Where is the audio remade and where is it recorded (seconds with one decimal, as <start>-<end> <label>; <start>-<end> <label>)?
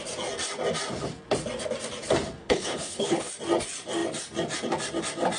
0.0-2.4 recorded; 2.4-3.3 remade; 3.3-5.4 recorded